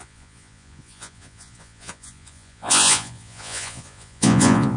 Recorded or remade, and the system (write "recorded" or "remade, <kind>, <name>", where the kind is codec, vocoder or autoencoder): remade, vocoder, Vocos